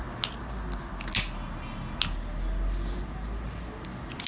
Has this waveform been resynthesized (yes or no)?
no